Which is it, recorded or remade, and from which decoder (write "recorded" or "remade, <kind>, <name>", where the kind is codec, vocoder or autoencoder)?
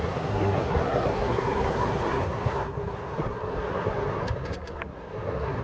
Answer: remade, codec, SNAC